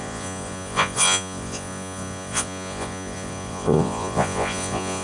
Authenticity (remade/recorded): remade